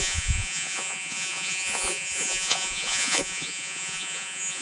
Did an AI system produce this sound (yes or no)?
yes